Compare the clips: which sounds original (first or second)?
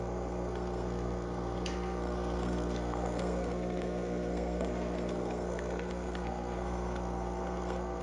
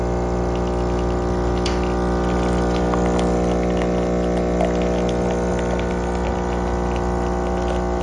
second